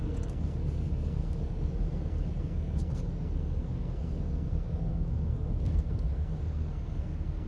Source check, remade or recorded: remade